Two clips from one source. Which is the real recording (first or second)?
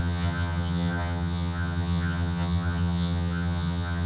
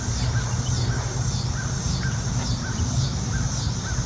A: second